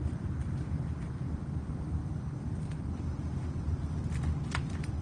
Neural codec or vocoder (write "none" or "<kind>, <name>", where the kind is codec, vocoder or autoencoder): none